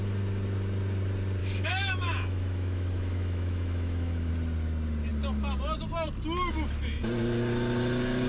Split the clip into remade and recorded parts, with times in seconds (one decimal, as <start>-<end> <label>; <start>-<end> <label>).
0.0-1.4 recorded; 1.4-4.3 remade; 4.3-8.3 recorded